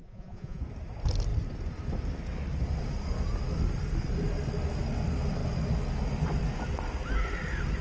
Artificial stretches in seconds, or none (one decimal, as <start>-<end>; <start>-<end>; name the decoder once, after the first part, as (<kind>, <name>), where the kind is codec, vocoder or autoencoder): 0.0-0.6 (vocoder, Vocos)